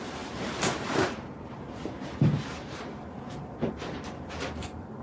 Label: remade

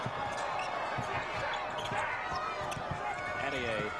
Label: recorded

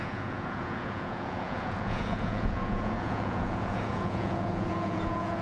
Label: remade